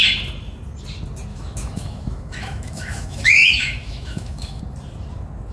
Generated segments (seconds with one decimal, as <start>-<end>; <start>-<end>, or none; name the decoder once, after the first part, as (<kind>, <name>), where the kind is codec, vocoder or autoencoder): 1.3-4.6 (autoencoder, DAC-VAE)